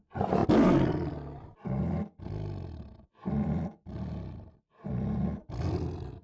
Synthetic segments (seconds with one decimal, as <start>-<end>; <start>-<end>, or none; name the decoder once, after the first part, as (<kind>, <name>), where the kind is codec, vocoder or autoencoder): none